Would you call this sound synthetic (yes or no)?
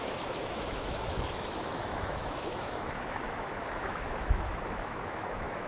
yes